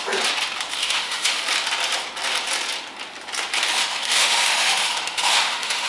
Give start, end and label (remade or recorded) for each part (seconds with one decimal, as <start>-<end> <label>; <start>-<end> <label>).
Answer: 0.0-0.8 recorded; 0.8-1.4 remade; 1.4-3.8 recorded; 3.8-5.9 remade